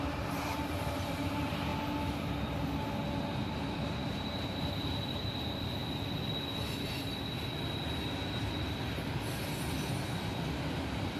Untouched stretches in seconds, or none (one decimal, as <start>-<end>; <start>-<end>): 1.7-3.5; 5.8-11.2